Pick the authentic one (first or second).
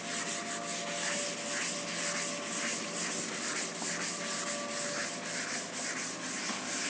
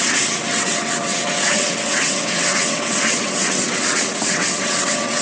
first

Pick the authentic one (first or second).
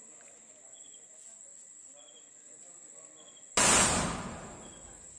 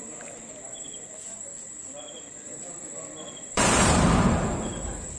first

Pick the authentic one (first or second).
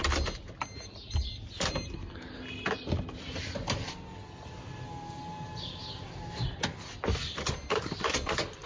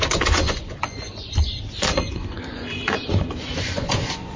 first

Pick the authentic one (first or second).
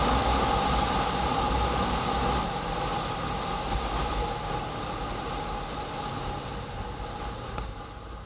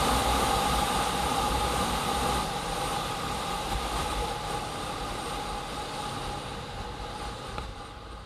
first